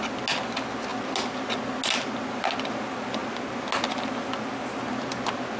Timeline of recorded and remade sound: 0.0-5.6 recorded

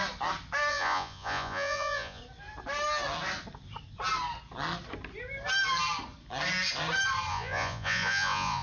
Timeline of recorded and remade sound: 0.0-0.7 recorded; 0.7-2.2 remade; 2.2-7.3 recorded; 7.3-8.6 remade

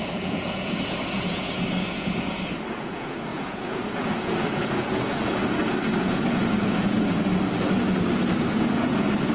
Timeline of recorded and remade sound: 0.0-5.4 remade; 5.4-6.0 recorded; 6.0-7.3 remade; 7.3-8.5 recorded; 8.5-9.3 remade

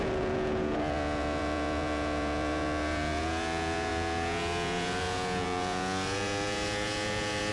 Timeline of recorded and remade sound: 0.0-7.5 remade

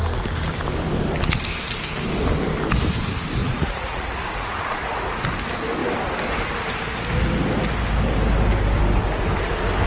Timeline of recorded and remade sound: 0.0-3.4 recorded; 3.4-5.2 remade; 5.2-9.9 recorded